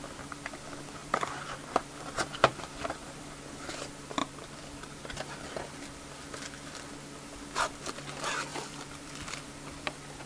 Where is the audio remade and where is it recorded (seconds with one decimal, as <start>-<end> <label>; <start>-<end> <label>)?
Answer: 0.0-1.0 recorded; 1.0-3.3 remade; 3.3-4.2 recorded; 4.2-5.1 remade; 5.1-8.5 recorded; 8.5-9.3 remade; 9.3-10.3 recorded